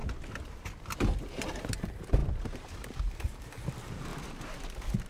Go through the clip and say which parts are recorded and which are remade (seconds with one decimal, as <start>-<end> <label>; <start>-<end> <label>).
0.0-1.8 recorded; 1.8-4.1 remade; 4.1-5.1 recorded